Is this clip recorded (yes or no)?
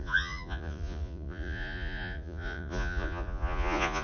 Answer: no